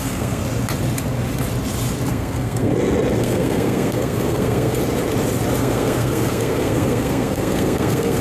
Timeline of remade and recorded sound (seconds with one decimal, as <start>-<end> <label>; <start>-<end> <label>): 0.0-0.4 remade; 0.4-2.1 recorded; 2.1-2.7 remade; 2.7-3.2 recorded; 3.2-4.8 remade; 4.8-5.6 recorded; 5.6-8.2 remade